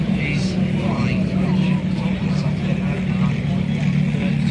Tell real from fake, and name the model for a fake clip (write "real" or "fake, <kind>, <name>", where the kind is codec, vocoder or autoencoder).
real